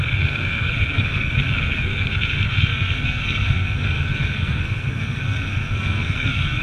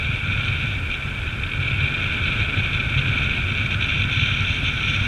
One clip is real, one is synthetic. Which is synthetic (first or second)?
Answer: first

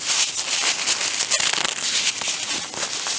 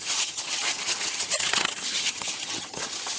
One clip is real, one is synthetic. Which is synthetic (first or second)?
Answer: second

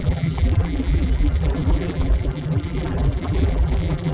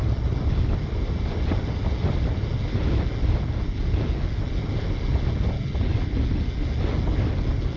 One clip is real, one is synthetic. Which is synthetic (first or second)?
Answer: first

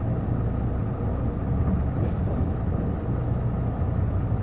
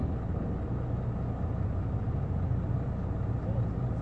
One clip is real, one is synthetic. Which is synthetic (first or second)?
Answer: first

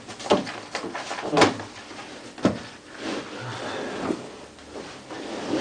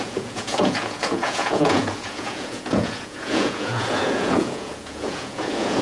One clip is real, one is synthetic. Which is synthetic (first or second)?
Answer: second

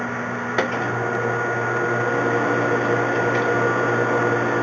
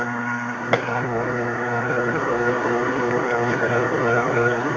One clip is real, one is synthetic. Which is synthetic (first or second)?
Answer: second